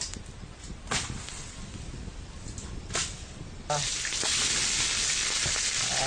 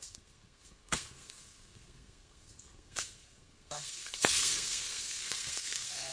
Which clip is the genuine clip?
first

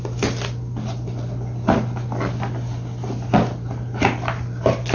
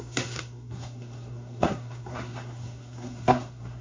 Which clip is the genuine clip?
first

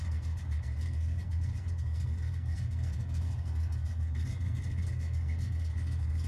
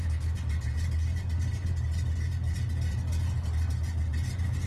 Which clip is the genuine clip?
second